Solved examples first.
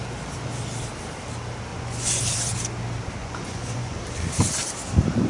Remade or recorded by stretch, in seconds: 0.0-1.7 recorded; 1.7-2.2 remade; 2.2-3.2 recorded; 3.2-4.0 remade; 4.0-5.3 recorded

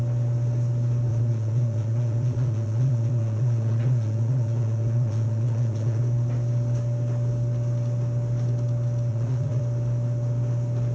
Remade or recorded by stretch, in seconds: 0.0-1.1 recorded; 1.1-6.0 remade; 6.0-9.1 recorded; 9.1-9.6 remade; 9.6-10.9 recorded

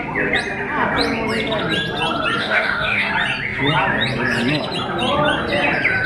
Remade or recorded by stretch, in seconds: 0.0-2.4 recorded; 2.4-3.1 remade; 3.1-6.1 recorded

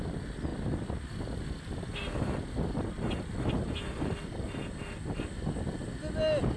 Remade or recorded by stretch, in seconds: 0.0-6.6 recorded